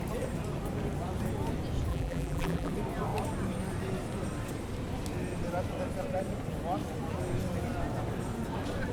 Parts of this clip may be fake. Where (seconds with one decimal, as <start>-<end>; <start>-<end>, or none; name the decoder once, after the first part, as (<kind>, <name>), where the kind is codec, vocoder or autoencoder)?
1.9-2.7 (vocoder, BigVGAN v2)

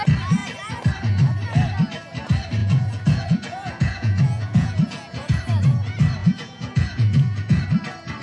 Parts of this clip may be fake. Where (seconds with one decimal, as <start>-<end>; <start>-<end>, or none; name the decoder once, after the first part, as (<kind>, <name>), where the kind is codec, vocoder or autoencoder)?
2.6-5.4 (vocoder, Vocos); 6.2-7.6